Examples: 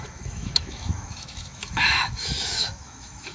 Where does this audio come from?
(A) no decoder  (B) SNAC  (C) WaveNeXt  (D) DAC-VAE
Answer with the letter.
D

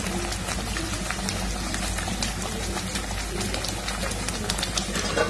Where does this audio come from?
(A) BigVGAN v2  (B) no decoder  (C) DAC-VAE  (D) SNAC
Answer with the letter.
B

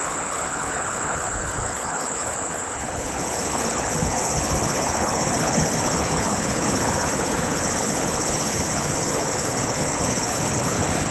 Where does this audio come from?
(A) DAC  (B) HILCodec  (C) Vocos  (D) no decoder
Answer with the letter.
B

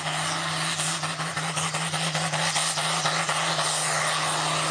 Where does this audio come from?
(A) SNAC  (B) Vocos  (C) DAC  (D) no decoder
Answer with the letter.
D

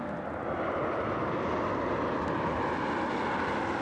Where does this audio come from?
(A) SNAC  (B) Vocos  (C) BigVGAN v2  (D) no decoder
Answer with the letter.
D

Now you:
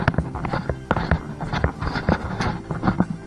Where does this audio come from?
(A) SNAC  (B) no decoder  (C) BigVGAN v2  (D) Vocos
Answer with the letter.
B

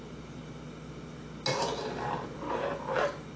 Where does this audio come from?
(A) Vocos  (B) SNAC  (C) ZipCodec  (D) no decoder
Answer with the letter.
D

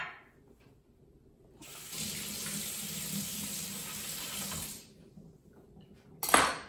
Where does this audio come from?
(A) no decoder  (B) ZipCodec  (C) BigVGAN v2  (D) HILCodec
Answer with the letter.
A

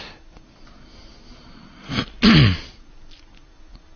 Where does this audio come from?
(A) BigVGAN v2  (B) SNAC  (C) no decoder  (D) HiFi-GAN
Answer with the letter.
C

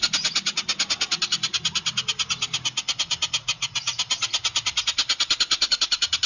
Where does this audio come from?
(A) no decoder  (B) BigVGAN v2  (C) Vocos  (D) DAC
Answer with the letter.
A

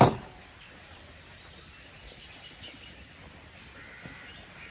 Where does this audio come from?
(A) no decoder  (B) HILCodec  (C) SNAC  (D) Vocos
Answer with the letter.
A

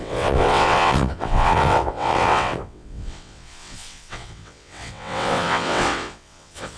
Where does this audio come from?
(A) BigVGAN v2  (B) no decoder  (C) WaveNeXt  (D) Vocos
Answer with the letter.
C